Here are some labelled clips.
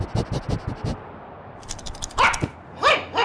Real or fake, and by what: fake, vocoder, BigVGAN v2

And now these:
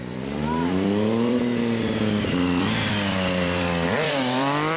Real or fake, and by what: fake, vocoder, BigVGAN v2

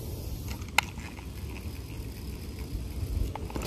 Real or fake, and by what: real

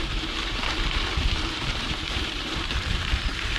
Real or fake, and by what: fake, vocoder, BigVGAN v2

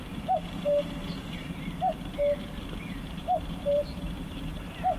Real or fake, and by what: fake, vocoder, BigVGAN v2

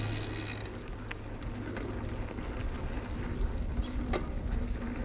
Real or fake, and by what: real